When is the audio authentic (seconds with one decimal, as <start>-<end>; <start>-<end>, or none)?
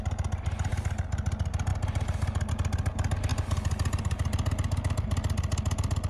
0.0-6.1